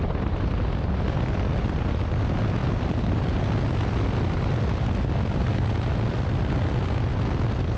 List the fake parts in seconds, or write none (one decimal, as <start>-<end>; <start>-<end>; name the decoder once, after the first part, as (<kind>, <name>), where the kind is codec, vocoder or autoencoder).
none